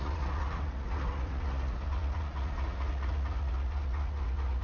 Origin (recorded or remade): remade